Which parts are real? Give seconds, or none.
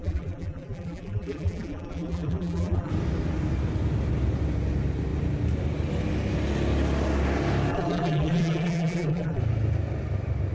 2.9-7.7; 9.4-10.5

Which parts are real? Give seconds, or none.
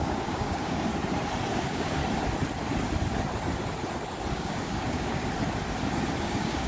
0.9-1.5; 2.0-4.3; 5.2-6.2